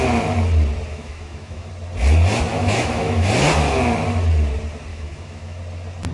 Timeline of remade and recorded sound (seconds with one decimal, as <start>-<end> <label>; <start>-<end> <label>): 0.0-0.9 recorded; 0.9-1.7 remade; 1.7-2.5 recorded; 2.5-3.3 remade; 3.3-4.9 recorded; 4.9-5.6 remade; 5.6-6.1 recorded